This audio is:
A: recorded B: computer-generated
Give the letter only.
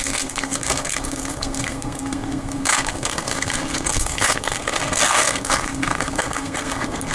B